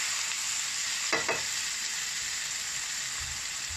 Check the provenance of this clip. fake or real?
fake